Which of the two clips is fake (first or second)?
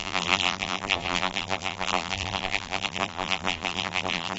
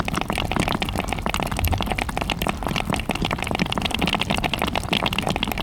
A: first